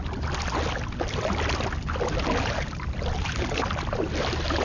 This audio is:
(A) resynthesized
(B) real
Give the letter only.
B